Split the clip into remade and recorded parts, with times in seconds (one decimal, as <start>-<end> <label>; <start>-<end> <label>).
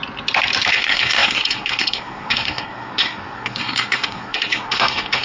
0.0-0.7 recorded; 0.7-5.2 remade